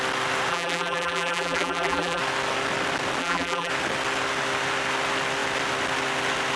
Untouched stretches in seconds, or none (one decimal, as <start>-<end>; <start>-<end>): 0.0-0.5; 2.2-3.2; 3.7-6.6